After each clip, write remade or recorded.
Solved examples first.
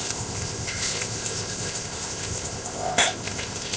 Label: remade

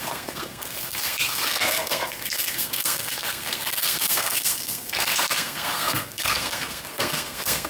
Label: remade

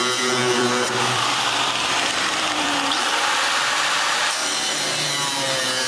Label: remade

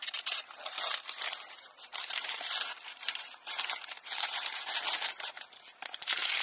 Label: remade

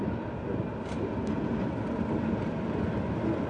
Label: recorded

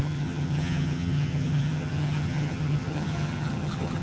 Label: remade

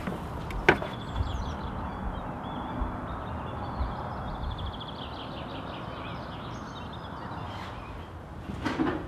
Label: recorded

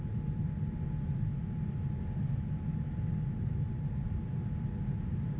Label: recorded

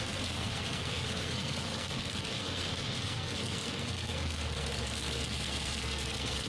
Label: remade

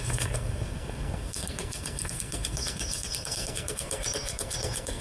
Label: remade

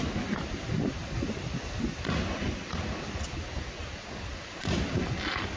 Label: recorded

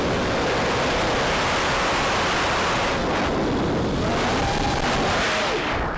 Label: recorded